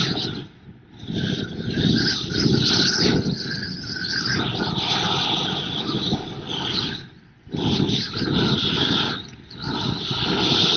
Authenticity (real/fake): real